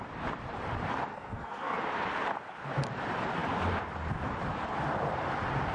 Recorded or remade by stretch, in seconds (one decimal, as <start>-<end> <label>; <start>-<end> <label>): 0.0-1.1 recorded; 1.1-1.8 remade; 1.8-5.7 recorded